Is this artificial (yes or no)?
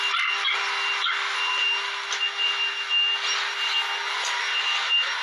no